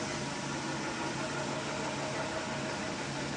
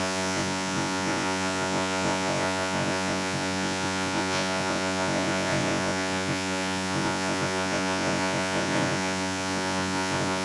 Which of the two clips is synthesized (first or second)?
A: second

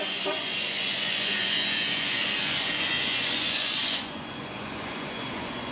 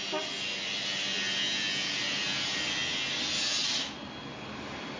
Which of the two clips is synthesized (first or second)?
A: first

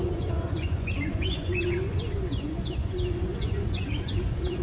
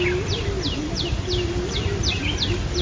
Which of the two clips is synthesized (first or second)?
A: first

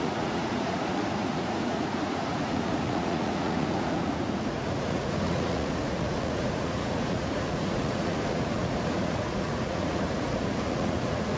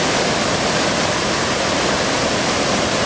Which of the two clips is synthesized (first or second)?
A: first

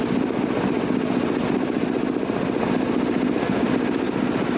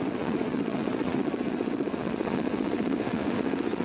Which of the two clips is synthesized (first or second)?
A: second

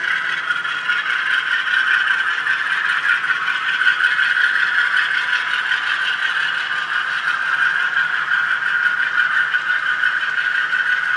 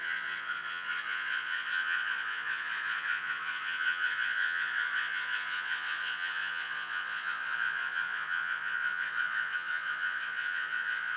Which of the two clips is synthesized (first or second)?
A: second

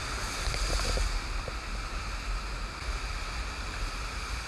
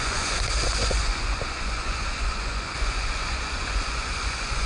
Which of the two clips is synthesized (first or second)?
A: second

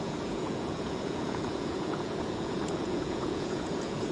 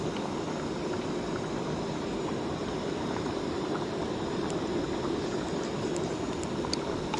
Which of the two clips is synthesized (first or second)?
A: first